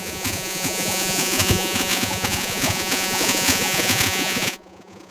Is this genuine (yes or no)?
no